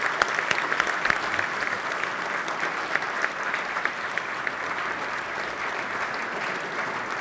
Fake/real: real